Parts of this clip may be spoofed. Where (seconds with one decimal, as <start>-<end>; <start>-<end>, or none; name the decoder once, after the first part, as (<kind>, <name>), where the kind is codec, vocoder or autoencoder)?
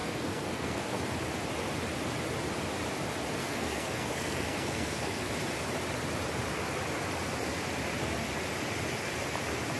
0.0-1.0 (codec, SNAC); 3.4-5.3